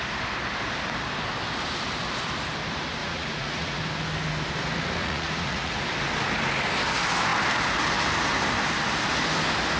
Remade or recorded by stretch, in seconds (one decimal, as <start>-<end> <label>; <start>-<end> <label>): 0.0-3.0 recorded; 3.0-3.8 remade; 3.8-5.0 recorded; 5.0-5.7 remade; 5.7-9.8 recorded